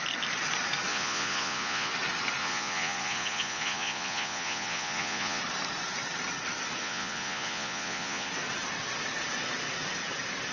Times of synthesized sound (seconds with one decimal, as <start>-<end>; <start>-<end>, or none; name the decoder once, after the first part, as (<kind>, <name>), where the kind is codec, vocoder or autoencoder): 0.9-1.9 (vocoder, Vocos); 2.4-5.4; 6.8-8.3